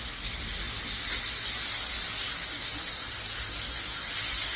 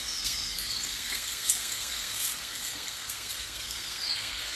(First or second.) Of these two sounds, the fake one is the second